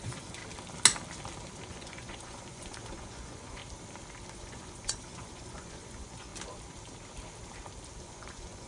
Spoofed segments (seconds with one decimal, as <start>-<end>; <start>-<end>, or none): 0.0-0.4; 1.7-3.6; 4.3-6.3; 8.0-8.7

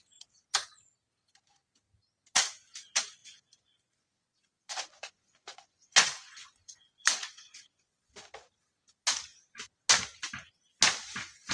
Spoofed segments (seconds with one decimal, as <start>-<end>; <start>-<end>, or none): 3.2-8.1